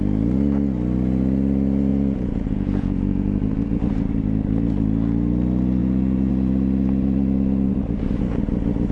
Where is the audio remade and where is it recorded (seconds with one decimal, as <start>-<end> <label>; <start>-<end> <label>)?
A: 0.0-1.9 recorded; 1.9-3.8 remade; 3.8-5.8 recorded; 5.8-6.3 remade; 6.3-8.9 recorded